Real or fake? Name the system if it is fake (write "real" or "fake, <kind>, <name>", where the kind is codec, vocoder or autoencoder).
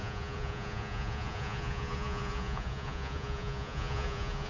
fake, vocoder, Vocos